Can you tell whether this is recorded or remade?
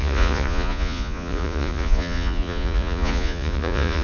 remade